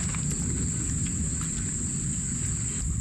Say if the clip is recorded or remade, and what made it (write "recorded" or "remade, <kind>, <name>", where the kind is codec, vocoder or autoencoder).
recorded